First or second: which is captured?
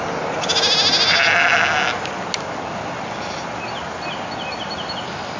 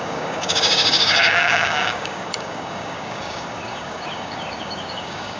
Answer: first